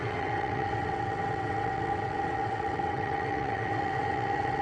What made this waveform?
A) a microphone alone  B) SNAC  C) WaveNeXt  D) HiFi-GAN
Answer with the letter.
C